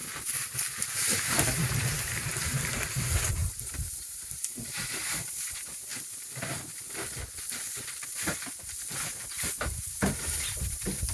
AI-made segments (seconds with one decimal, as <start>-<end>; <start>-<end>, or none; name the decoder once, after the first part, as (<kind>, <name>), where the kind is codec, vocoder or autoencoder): 0.8-5.9 (vocoder, BigVGAN v2); 9.6-11.1

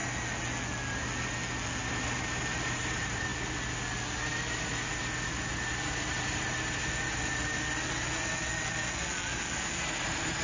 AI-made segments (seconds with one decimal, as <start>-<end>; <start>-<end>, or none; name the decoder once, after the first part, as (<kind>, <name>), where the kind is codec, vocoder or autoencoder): 1.9-3.3 (vocoder, BigVGAN v2); 5.9-6.8; 9.8-10.4